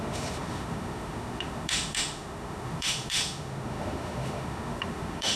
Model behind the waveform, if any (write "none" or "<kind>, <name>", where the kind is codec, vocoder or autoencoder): autoencoder, DAC-VAE